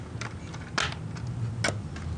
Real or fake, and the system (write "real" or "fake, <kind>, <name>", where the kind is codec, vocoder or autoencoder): real